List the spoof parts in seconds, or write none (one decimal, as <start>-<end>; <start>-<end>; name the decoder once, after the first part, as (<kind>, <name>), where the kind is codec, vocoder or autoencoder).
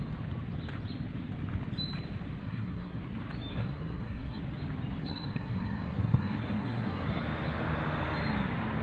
2.4-3.0 (codec, SNAC); 3.5-4.4; 5.0-7.2